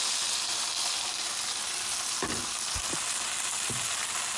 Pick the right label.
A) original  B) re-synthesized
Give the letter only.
A